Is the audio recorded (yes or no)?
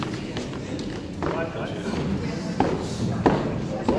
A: yes